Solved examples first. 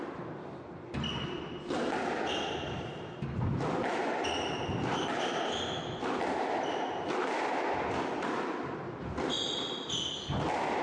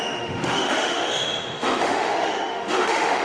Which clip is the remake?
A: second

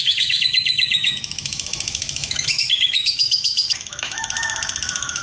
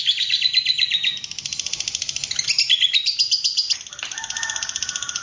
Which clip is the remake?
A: first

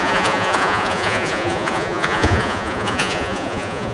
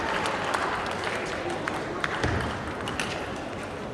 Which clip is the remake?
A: first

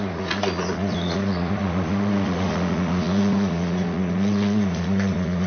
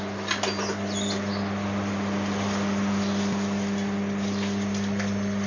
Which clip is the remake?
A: first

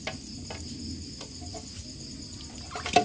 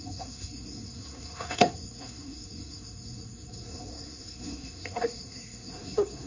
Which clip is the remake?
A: second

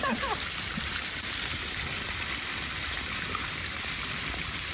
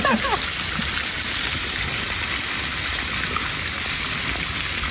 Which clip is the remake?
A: first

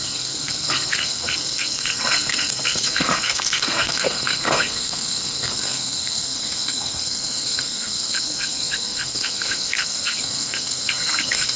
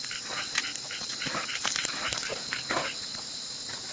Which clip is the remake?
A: first